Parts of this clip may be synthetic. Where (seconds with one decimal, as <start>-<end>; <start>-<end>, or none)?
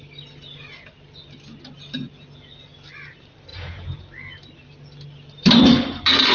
3.5-4.0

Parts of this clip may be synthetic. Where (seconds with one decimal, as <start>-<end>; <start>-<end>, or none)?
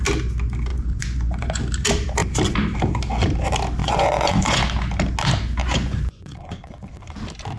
0.7-1.6; 3.8-4.6; 5.6-6.9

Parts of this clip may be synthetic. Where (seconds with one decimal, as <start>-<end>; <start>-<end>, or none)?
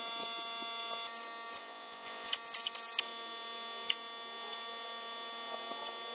1.6-2.3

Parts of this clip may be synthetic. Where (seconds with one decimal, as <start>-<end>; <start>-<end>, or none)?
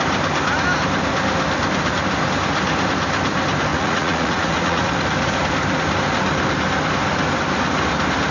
3.7-4.9